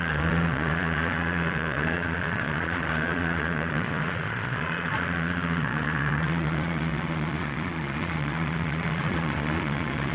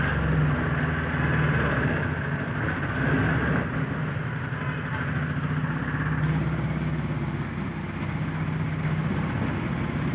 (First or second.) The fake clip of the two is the first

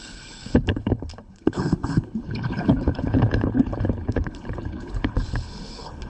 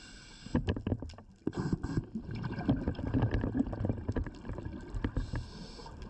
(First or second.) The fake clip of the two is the first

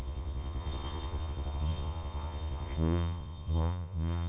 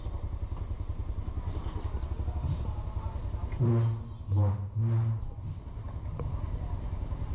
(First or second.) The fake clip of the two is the first